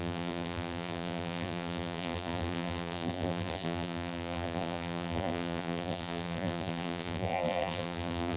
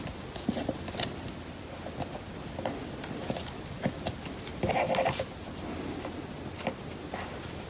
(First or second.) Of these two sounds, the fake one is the first